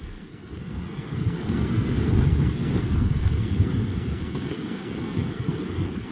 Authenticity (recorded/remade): remade